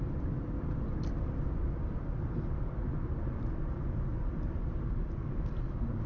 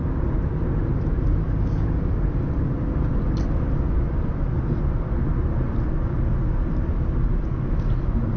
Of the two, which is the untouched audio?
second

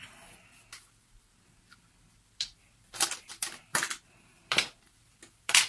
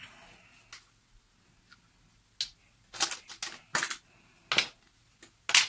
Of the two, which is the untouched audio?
second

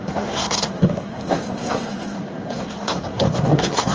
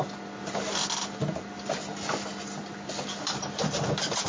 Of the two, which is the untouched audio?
second